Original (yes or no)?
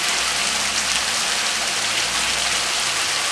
yes